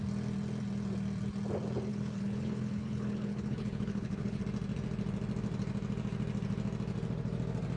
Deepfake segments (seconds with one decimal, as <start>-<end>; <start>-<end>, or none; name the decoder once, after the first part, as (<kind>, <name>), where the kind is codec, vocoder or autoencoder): 1.9-4.4 (codec, HILCodec)